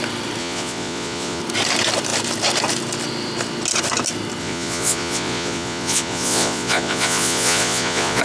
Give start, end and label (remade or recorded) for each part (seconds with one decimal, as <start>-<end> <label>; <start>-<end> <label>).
0.0-0.4 recorded; 0.4-1.4 remade; 1.4-4.4 recorded; 4.4-8.2 remade